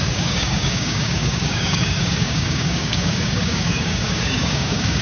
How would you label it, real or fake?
fake